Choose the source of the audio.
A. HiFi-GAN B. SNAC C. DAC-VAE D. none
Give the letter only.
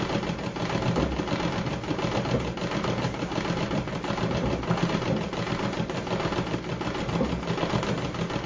D